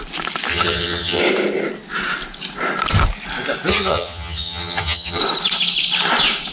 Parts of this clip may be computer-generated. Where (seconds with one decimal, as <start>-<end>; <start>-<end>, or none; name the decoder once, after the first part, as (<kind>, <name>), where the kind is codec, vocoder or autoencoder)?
0.5-1.2 (vocoder, HiFi-GAN); 3.7-5.2

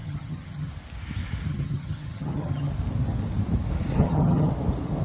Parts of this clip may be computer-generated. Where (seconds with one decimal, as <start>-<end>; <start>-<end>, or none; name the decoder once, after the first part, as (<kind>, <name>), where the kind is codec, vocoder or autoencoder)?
0.0-0.7 (vocoder, HiFi-GAN); 1.5-2.7; 3.9-4.5

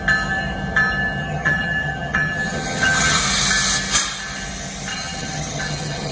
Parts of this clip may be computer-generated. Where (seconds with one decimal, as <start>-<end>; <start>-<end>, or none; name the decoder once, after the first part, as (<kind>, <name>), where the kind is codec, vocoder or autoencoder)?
1.2-3.2 (vocoder, HiFi-GAN); 4.9-6.1

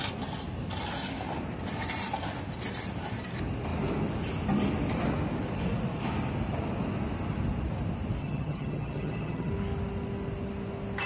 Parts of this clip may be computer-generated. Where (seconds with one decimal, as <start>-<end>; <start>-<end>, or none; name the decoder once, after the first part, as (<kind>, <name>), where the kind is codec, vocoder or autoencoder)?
8.2-9.5 (vocoder, HiFi-GAN)

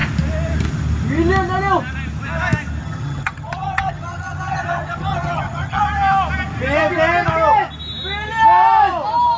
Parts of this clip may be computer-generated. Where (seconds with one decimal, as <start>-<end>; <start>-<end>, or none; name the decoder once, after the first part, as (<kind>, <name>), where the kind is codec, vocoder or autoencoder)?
2.8-5.8 (vocoder, HiFi-GAN)

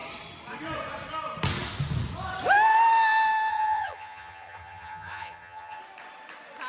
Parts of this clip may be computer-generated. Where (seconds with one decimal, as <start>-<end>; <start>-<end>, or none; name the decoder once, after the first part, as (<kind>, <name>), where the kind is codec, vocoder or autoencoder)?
3.5-5.8 (vocoder, HiFi-GAN)